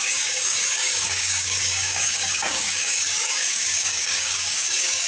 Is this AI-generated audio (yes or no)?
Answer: yes